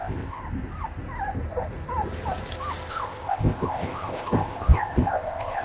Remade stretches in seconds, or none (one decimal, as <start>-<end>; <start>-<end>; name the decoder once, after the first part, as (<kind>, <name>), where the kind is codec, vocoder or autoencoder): 0.0-0.4 (codec, ZipCodec); 2.9-5.6